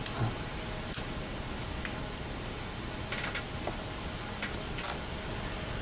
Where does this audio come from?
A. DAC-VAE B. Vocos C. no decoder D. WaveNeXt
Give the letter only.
C